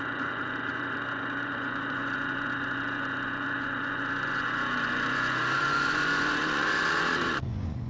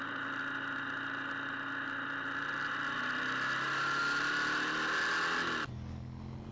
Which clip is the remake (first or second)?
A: first